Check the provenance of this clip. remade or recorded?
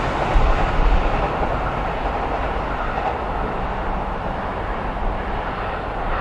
recorded